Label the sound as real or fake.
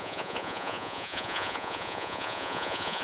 fake